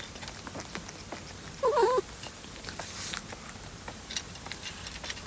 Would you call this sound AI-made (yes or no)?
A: no